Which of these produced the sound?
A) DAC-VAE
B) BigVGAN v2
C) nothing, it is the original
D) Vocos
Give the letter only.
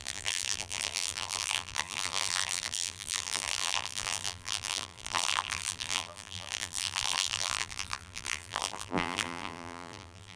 B